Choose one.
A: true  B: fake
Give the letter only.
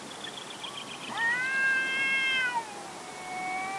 A